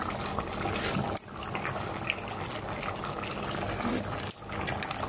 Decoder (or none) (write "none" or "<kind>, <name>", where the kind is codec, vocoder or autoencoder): none